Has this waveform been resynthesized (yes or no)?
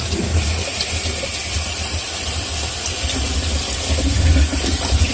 no